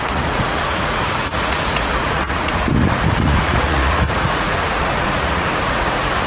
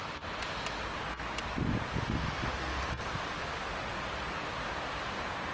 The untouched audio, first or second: second